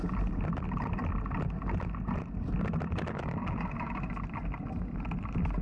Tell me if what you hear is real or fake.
real